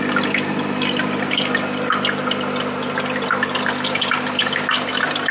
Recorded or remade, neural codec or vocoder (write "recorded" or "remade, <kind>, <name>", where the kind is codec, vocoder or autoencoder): recorded